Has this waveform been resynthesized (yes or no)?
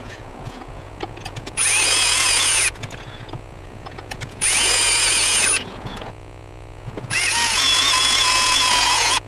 yes